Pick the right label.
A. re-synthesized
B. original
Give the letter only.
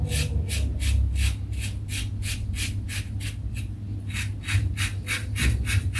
B